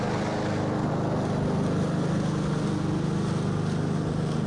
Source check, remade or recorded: recorded